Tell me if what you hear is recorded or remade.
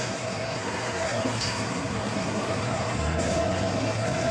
remade